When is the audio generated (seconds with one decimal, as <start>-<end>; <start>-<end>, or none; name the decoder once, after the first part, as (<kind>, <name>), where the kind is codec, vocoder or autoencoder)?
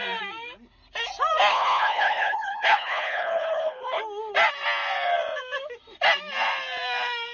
1.5-4.0 (codec, HILCodec)